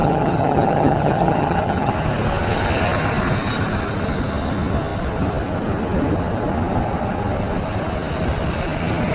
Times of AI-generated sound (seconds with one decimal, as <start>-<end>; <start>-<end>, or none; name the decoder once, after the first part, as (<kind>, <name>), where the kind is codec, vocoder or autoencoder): 0.0-1.9 (vocoder, HiFi-GAN)